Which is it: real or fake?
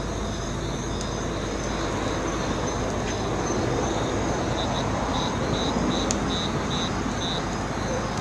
real